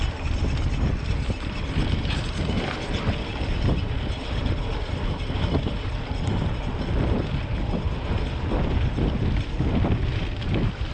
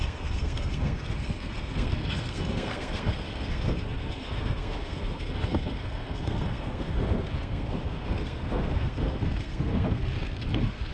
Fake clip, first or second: second